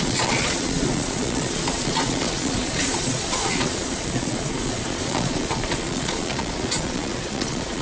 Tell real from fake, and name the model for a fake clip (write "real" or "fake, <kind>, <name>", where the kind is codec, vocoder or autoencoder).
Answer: fake, vocoder, Vocos